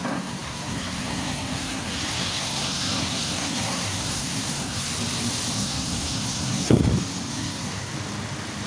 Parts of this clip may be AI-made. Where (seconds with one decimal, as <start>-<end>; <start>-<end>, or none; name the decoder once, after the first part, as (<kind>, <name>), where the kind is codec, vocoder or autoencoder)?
0.0-4.9 (codec, SNAC); 5.5-6.8; 7.3-7.9